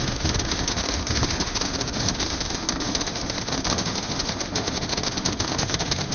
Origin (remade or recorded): remade